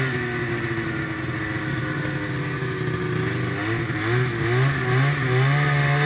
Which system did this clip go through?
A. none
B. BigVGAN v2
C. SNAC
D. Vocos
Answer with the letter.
A